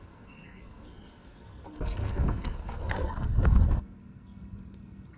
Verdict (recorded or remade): remade